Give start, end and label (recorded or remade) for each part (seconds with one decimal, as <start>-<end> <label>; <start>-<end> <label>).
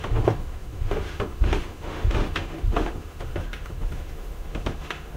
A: 0.0-5.2 remade